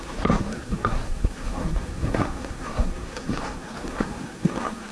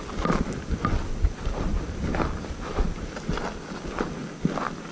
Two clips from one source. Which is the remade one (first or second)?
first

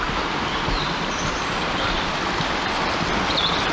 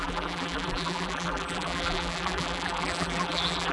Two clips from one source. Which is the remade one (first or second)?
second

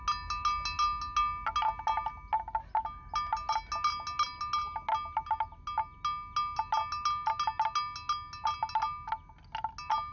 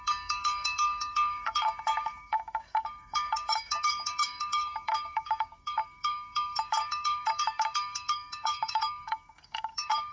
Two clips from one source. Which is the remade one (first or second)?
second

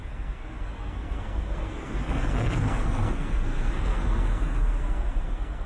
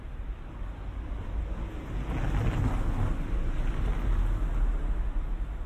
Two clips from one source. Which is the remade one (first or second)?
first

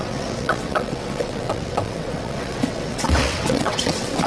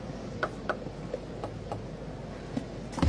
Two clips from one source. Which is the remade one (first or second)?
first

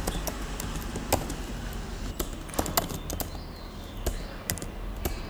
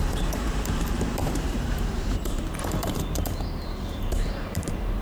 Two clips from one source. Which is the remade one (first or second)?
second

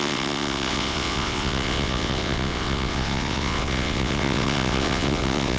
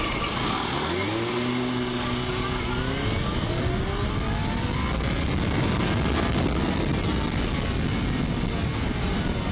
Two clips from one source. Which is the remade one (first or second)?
first